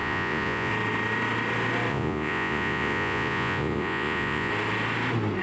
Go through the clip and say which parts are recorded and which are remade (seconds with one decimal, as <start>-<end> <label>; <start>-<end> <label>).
0.0-0.7 remade; 0.7-1.9 recorded; 1.9-4.5 remade; 4.5-5.4 recorded